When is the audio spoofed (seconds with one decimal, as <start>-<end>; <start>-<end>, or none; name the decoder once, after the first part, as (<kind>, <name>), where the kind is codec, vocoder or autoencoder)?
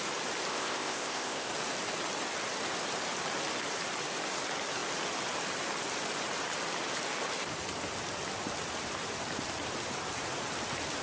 0.5-1.5 (codec, ZipCodec)